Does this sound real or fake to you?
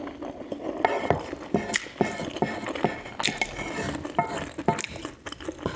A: real